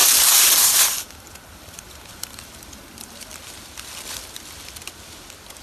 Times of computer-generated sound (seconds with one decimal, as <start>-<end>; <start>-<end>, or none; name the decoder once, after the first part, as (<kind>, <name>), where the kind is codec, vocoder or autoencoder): 0.0-3.1 (vocoder, BigVGAN v2)